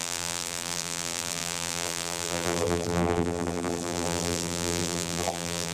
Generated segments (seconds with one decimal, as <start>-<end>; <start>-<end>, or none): 0.0-5.7